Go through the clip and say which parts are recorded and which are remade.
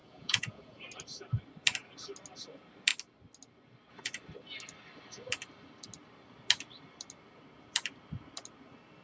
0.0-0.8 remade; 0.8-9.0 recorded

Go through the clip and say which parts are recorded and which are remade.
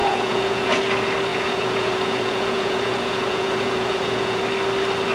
0.0-0.8 remade; 0.8-1.3 recorded; 1.3-4.4 remade; 4.4-5.1 recorded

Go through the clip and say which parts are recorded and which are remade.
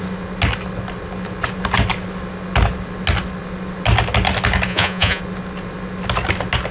0.0-4.7 recorded; 4.7-5.2 remade; 5.2-6.7 recorded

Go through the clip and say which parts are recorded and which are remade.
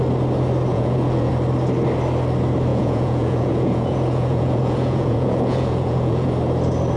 0.0-0.7 recorded; 0.7-1.3 remade; 1.3-2.7 recorded; 2.7-6.3 remade; 6.3-7.0 recorded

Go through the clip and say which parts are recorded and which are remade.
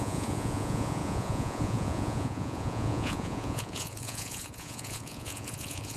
0.0-6.0 remade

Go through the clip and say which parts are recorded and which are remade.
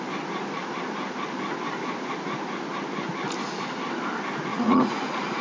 0.0-4.5 recorded; 4.5-5.4 remade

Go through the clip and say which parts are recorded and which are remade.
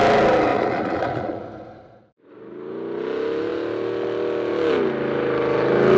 0.0-0.5 recorded; 0.5-2.3 remade; 2.3-6.0 recorded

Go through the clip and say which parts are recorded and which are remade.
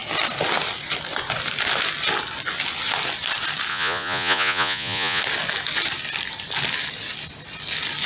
0.0-3.7 recorded; 3.7-5.2 remade; 5.2-8.1 recorded